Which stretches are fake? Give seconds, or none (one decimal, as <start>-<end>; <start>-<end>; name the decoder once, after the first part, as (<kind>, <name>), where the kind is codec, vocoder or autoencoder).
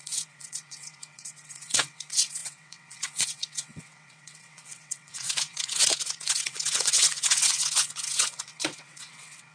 0.0-9.5 (vocoder, WaveNeXt)